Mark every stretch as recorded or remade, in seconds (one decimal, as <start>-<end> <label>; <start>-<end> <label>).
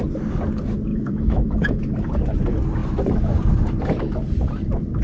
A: 0.0-0.9 recorded; 0.9-2.1 remade; 2.1-5.0 recorded